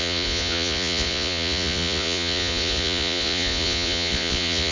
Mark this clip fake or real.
fake